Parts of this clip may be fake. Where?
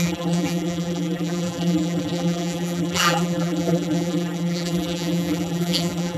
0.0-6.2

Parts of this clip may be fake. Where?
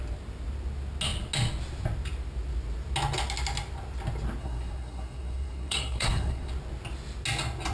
4.4-6.5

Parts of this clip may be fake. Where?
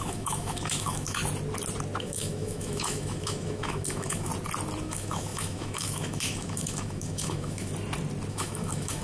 0.0-1.2; 2.0-4.3; 4.8-7.7; 8.3-9.0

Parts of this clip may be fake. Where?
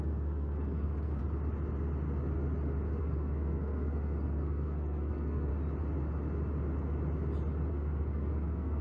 0.0-1.2; 3.0-5.5; 7.7-8.8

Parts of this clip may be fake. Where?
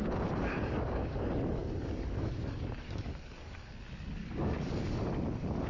0.4-1.1; 1.6-3.7; 4.2-5.0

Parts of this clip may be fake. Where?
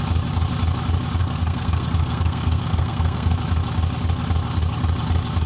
1.2-3.4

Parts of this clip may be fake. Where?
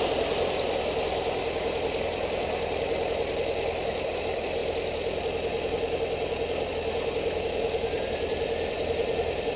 none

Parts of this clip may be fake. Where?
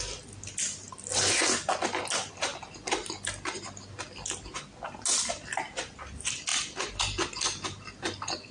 none